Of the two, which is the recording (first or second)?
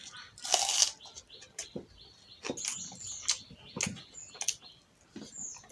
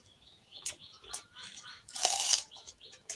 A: first